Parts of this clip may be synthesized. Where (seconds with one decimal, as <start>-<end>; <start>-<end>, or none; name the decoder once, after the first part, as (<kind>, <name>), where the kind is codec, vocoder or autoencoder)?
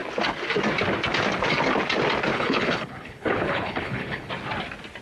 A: 2.3-4.3 (codec, HILCodec)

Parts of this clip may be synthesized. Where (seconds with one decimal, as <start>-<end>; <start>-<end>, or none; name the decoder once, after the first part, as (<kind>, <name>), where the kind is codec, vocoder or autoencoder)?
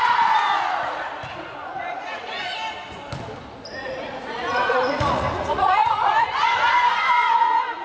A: 0.0-2.5 (vocoder, Vocos); 3.8-7.8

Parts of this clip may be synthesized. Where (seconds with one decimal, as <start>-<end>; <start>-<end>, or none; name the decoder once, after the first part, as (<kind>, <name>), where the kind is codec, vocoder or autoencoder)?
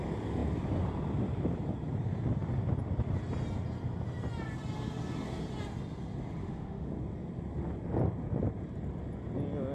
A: 6.4-6.9 (autoencoder, DAC-VAE)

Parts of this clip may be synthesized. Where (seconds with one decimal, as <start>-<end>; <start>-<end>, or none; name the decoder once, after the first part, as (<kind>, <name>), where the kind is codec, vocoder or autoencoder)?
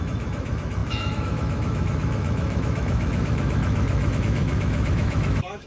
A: 0.0-5.7 (autoencoder, DAC-VAE)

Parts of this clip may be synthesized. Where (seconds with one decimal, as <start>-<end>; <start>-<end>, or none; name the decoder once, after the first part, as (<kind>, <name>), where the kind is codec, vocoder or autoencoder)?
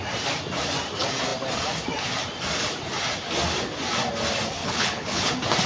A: 4.6-5.3 (codec, HILCodec)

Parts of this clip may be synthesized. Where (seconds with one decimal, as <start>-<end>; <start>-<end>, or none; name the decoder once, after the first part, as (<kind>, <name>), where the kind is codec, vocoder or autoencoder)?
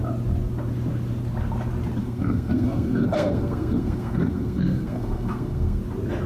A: 2.0-5.8 (codec, SNAC)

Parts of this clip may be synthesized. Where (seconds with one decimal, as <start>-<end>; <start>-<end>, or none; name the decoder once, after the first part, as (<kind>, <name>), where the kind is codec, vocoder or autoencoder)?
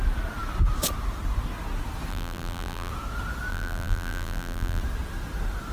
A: 2.1-2.9 (vocoder, BigVGAN v2); 3.5-4.8